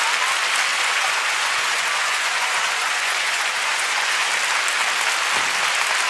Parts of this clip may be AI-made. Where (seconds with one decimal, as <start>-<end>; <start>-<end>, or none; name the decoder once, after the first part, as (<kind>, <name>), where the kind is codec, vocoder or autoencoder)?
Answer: 0.7-4.3 (vocoder, Vocos)